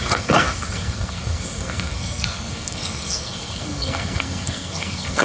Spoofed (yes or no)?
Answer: yes